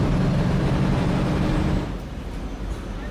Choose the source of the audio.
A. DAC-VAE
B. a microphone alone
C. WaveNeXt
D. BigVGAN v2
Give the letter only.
D